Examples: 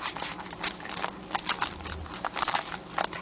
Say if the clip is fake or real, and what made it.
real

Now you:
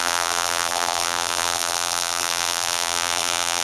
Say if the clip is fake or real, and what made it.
fake, vocoder, BigVGAN v2